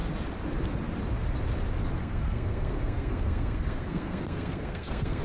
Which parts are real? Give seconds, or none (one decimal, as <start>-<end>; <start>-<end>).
0.0-2.0